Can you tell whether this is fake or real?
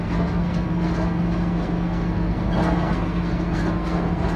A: fake